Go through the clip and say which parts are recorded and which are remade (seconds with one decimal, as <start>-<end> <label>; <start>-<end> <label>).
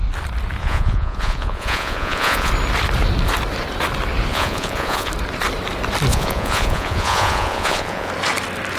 0.0-0.6 recorded; 0.6-2.5 remade; 2.5-4.3 recorded; 4.3-5.1 remade; 5.1-6.1 recorded; 6.1-8.1 remade; 8.1-8.8 recorded